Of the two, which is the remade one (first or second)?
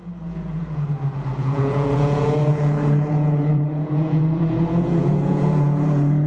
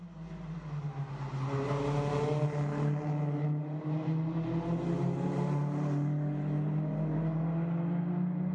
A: first